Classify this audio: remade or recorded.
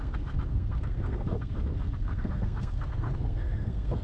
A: remade